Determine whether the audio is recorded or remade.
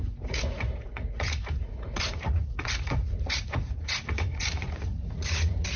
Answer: remade